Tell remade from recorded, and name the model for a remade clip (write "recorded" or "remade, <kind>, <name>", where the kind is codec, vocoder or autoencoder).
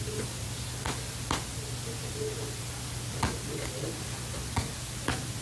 recorded